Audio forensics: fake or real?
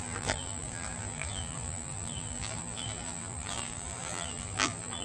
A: fake